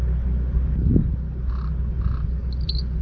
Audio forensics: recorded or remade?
recorded